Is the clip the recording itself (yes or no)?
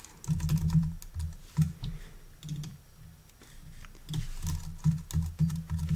yes